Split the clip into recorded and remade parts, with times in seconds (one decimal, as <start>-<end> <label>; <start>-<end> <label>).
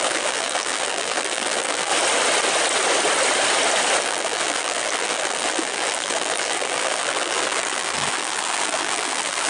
0.0-1.9 remade; 1.9-4.0 recorded; 4.0-9.5 remade